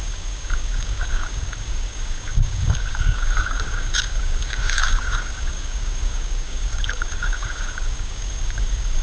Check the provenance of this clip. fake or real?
fake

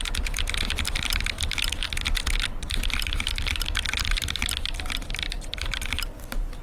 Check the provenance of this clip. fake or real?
real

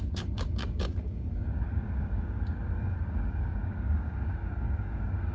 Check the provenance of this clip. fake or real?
fake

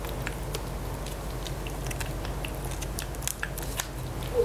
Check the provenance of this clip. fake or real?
real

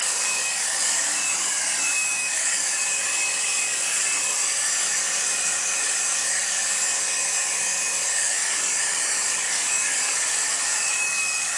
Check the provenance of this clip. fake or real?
fake